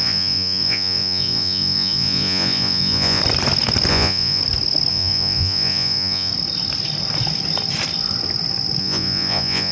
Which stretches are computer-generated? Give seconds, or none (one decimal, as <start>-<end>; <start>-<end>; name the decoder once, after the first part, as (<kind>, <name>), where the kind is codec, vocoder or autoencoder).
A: 0.0-3.2 (vocoder, Vocos); 3.9-4.4; 4.9-6.3; 8.8-9.7